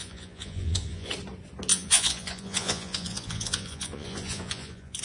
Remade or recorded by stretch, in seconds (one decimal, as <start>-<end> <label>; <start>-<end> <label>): 0.0-1.1 remade; 1.1-1.7 recorded; 1.7-5.0 remade